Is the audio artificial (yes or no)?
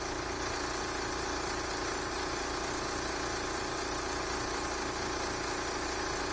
no